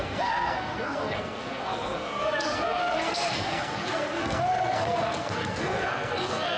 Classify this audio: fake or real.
fake